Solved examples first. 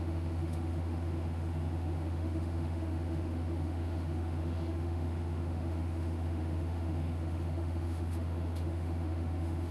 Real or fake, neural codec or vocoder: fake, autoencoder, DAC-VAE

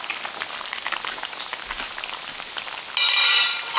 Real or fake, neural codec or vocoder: real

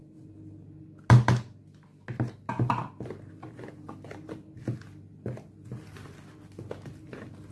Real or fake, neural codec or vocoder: real